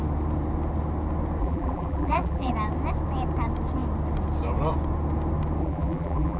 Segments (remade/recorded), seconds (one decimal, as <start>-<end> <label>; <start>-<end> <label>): 0.0-1.4 recorded; 1.4-2.5 remade; 2.5-5.6 recorded; 5.6-6.4 remade